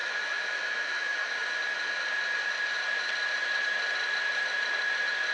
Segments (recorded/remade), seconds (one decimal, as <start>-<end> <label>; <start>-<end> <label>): 0.0-1.3 remade; 1.3-5.3 recorded